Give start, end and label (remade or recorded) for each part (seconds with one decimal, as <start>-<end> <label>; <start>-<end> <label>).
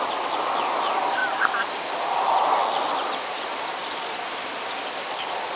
0.0-5.6 recorded